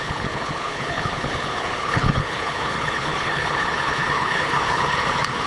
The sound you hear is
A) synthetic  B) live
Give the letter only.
A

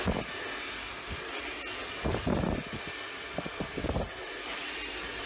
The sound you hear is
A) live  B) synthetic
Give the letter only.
A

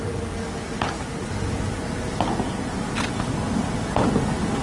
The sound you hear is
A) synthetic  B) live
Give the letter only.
B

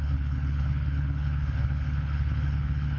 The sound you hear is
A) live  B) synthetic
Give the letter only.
B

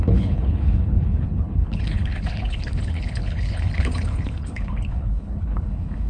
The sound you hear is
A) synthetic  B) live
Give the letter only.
A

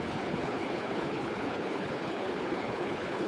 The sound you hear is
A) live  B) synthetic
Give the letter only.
B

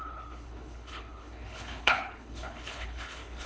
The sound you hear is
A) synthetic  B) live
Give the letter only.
A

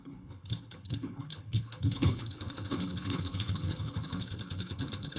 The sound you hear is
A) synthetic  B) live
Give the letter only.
A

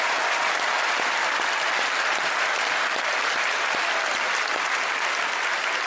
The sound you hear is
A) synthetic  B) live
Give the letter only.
B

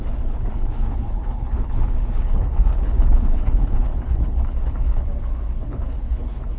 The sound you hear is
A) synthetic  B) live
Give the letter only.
A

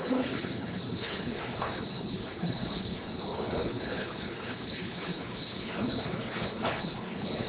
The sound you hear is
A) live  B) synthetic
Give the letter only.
B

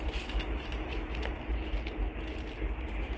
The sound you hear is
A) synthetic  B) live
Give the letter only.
B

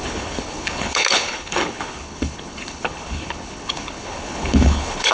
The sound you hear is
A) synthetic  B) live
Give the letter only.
A